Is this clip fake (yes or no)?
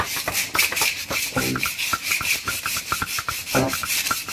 yes